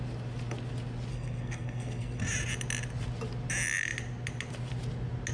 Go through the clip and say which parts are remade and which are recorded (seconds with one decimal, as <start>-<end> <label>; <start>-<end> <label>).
0.0-1.1 recorded; 1.1-2.2 remade; 2.2-5.3 recorded